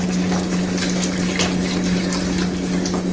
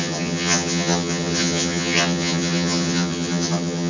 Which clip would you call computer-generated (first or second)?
second